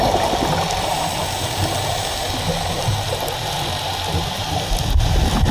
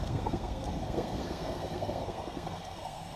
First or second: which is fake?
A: second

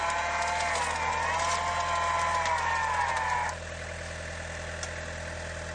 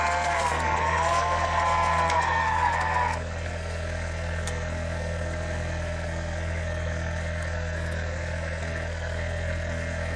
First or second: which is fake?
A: second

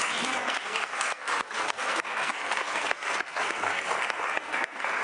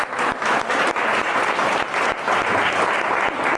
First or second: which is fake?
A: first